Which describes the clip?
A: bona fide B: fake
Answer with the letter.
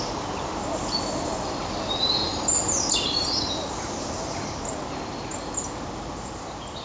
A